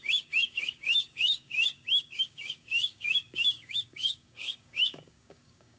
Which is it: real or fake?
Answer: fake